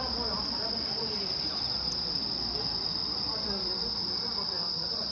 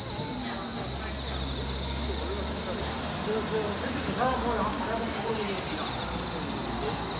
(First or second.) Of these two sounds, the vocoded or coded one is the first